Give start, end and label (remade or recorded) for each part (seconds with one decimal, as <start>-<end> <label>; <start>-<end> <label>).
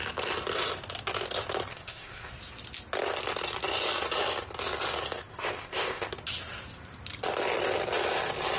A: 0.0-1.7 recorded; 1.7-2.3 remade; 2.3-5.3 recorded; 5.3-6.1 remade; 6.1-8.6 recorded